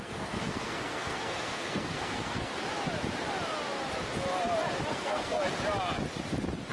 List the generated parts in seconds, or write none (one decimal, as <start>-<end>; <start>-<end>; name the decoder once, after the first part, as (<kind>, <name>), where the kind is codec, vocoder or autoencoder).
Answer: 0.0-2.5 (codec, SNAC); 4.9-5.4